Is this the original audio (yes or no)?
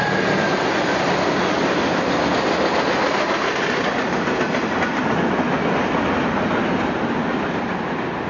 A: yes